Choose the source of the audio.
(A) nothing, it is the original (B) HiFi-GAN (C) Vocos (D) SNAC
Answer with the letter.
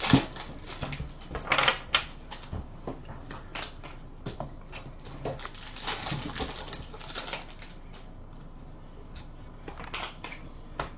A